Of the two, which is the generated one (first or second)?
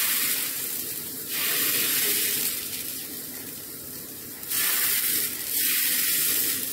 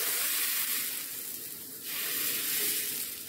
first